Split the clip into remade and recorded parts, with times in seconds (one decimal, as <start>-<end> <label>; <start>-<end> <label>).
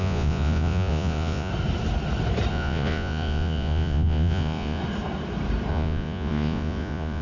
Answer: 0.0-1.5 remade; 1.5-2.5 recorded; 2.5-4.8 remade; 4.8-5.7 recorded; 5.7-7.2 remade